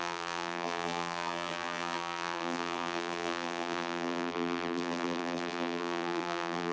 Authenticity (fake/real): fake